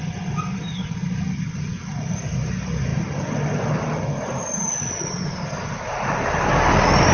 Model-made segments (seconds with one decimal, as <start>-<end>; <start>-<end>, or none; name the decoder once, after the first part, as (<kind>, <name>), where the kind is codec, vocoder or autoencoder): none